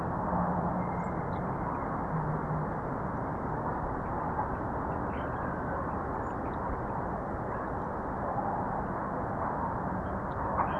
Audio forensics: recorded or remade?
recorded